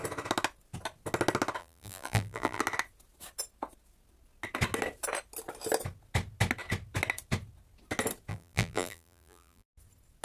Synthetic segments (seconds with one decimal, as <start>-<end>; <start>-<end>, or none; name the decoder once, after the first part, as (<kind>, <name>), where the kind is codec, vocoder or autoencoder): 1.6-2.6 (vocoder, BigVGAN v2); 8.3-9.7